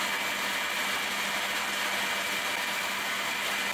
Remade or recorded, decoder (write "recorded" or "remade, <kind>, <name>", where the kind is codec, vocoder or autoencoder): recorded